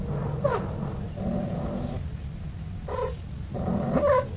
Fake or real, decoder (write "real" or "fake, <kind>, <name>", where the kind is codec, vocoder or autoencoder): real